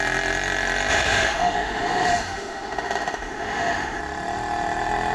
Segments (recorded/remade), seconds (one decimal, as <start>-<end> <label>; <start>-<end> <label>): 0.0-0.9 recorded; 0.9-4.0 remade; 4.0-5.1 recorded